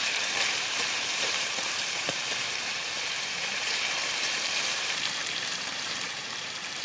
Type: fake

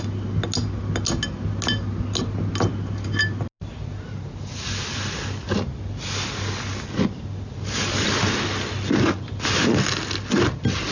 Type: real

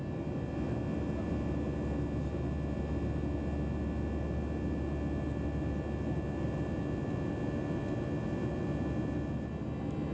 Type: real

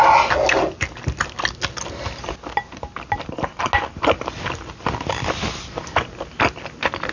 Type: real